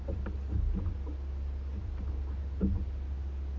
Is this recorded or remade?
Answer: recorded